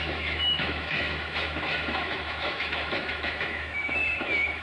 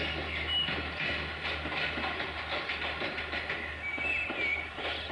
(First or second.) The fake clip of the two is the first